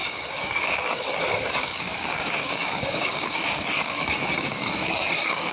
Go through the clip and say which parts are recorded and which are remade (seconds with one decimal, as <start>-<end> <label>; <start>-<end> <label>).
0.0-5.5 remade